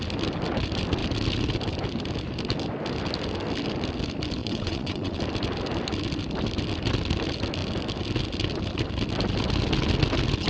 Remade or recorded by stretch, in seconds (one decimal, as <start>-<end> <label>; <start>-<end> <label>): 0.0-4.4 recorded; 4.4-5.2 remade; 5.2-10.5 recorded